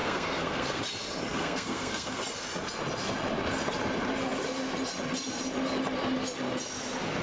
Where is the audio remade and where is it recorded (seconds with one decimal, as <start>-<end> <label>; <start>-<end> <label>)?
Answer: 0.0-0.8 remade; 0.8-1.3 recorded; 1.3-2.2 remade; 2.2-7.2 recorded